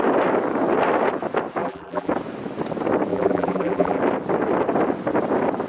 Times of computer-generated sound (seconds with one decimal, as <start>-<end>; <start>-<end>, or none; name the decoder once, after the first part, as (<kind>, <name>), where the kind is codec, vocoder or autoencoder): 1.6-2.1 (vocoder, BigVGAN v2); 3.1-4.0